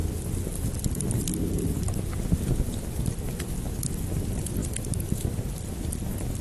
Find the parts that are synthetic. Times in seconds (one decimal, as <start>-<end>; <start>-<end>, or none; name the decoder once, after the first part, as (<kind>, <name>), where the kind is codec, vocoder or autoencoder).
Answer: 4.6-5.3 (vocoder, BigVGAN v2)

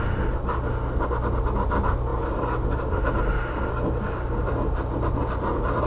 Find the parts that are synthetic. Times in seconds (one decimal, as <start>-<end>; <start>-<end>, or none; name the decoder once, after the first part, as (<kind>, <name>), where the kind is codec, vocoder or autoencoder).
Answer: none